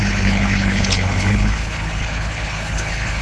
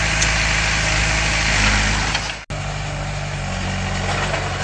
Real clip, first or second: second